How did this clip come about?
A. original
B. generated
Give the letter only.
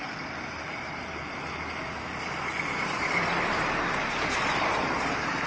A